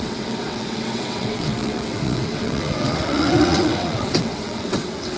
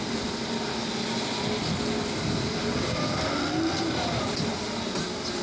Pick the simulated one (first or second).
first